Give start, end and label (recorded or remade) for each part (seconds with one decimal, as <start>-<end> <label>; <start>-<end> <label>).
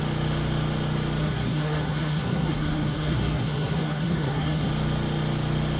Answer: 0.0-1.2 recorded; 1.2-4.7 remade; 4.7-5.8 recorded